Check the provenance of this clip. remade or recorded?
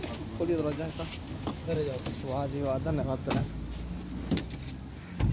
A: recorded